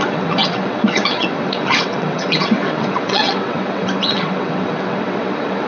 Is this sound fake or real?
fake